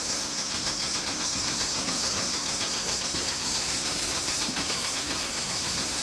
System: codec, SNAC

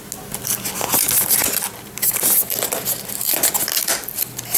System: none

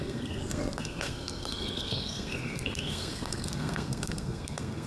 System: codec, SNAC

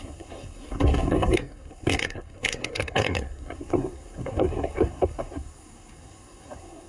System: codec, SNAC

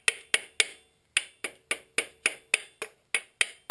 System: none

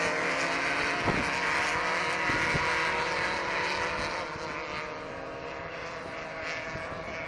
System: none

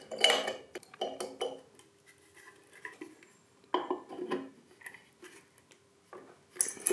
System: none